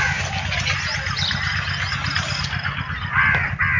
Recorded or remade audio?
recorded